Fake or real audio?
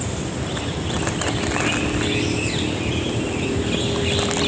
real